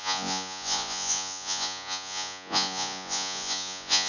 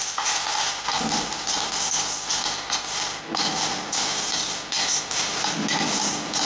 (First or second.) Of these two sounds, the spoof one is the first